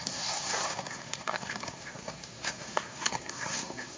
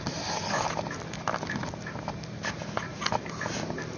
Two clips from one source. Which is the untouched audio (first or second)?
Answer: second